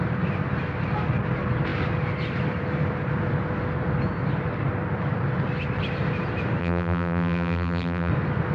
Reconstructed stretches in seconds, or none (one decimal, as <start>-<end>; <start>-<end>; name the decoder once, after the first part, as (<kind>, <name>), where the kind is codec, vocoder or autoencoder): 6.6-8.1 (vocoder, BigVGAN v2)